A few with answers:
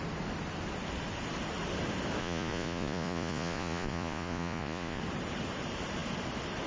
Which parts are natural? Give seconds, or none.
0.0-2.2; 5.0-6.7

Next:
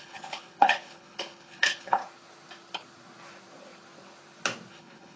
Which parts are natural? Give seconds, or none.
2.0-4.7

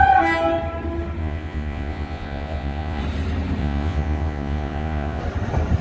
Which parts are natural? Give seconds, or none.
0.0-1.2; 3.0-3.6; 5.2-5.8

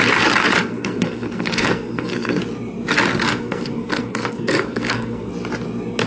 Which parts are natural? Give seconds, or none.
0.0-0.6; 2.4-3.1; 5.3-6.1